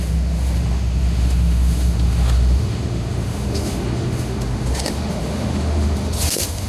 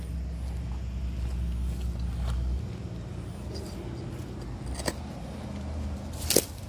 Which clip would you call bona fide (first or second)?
second